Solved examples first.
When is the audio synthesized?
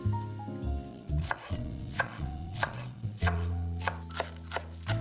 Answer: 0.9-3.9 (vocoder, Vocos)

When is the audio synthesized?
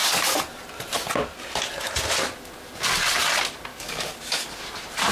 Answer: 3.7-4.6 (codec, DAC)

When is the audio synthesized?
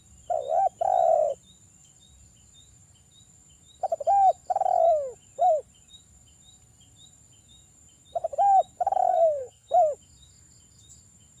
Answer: 9.1-9.7 (codec, SNAC)